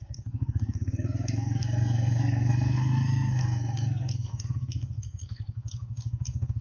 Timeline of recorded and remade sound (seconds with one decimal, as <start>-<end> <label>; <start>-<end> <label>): 0.0-6.6 remade